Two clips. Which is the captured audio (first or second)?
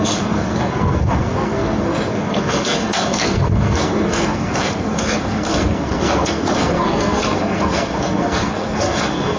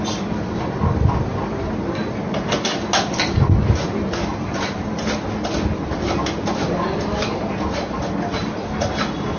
second